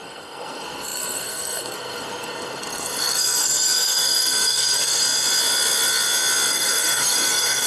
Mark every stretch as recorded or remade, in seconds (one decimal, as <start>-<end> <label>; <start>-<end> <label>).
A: 0.0-5.0 remade; 5.0-6.5 recorded; 6.5-7.7 remade